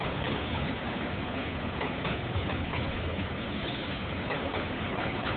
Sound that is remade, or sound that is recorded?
remade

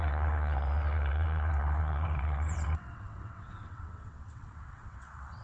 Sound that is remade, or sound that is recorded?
remade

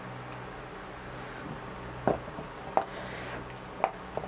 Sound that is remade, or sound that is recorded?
recorded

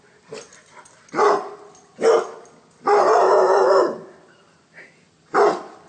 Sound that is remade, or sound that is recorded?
recorded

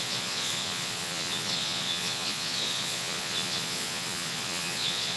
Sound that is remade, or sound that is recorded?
remade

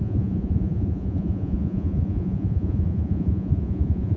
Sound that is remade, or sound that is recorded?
remade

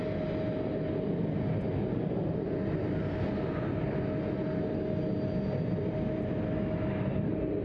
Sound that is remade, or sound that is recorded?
recorded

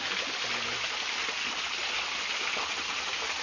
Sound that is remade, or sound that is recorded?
recorded